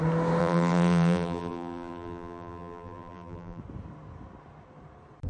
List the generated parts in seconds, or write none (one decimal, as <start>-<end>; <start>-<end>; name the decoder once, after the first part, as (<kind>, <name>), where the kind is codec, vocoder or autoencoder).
0.4-3.6 (vocoder, BigVGAN v2)